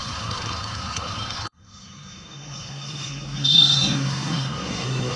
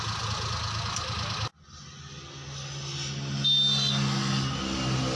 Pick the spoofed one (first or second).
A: first